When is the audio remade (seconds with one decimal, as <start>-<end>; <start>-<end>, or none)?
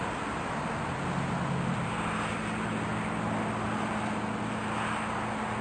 0.0-2.4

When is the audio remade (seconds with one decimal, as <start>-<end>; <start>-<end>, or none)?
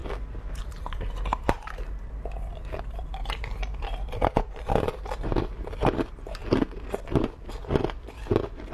0.7-6.4; 6.9-7.6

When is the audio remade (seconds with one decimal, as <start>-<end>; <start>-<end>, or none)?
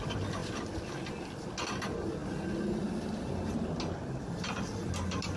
none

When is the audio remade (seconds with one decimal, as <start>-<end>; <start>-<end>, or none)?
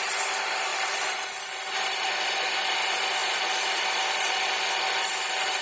0.7-1.3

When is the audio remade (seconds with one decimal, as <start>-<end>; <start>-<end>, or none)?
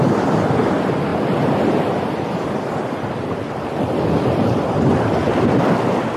none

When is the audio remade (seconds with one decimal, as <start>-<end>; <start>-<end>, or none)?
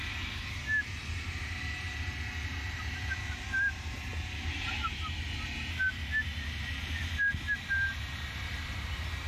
none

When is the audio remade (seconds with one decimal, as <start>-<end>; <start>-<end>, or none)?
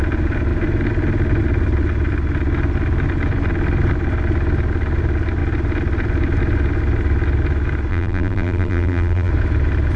7.9-9.3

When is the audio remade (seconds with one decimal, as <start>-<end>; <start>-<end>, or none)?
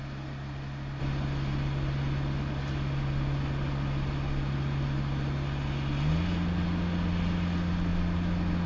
none